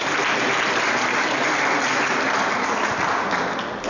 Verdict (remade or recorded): recorded